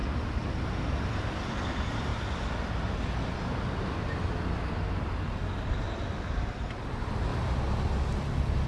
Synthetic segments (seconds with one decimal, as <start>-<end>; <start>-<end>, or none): none